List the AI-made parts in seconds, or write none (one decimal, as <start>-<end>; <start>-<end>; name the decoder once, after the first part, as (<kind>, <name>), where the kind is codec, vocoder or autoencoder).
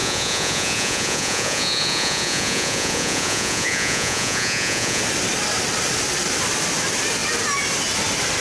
0.0-5.0 (vocoder, Vocos)